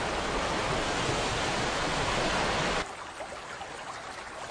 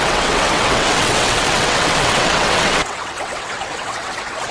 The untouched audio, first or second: first